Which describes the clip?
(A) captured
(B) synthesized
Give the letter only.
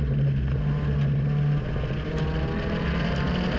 A